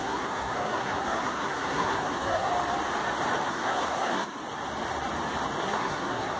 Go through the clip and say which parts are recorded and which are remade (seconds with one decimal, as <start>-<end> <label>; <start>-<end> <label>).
0.0-2.5 remade; 2.5-3.5 recorded; 3.5-4.4 remade; 4.4-5.6 recorded; 5.6-6.4 remade

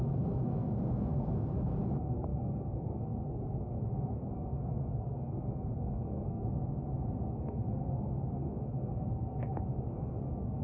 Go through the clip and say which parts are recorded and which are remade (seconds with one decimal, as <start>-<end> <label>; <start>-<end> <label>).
0.0-6.4 remade; 6.4-7.3 recorded; 7.3-10.6 remade